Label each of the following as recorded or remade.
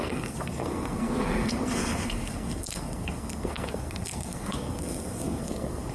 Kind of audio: remade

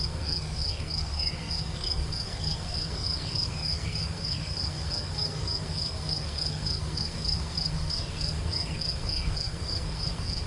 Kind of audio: remade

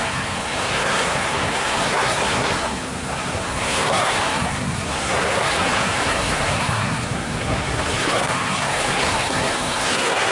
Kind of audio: remade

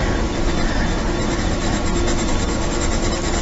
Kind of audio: recorded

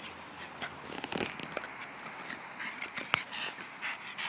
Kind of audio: recorded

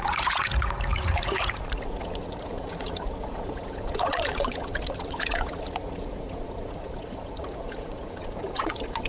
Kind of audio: remade